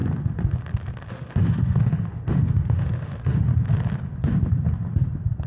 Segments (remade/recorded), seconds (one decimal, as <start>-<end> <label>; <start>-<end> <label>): 0.0-1.1 recorded; 1.1-3.5 remade; 3.5-5.5 recorded

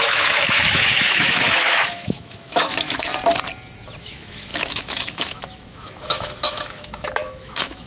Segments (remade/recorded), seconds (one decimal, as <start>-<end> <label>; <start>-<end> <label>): 0.0-3.1 remade; 3.1-4.0 recorded; 4.0-7.9 remade